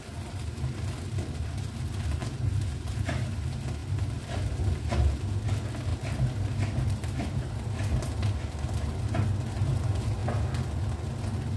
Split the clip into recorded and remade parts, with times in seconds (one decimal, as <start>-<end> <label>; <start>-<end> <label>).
0.0-11.6 recorded